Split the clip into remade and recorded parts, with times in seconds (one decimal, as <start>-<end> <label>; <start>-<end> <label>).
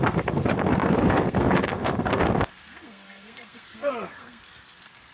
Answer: 0.0-5.1 remade